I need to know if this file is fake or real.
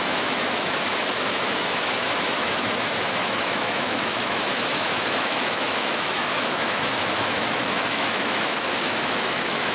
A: fake